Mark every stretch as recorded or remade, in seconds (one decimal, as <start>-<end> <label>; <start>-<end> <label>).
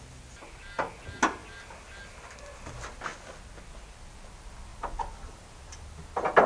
0.0-6.5 recorded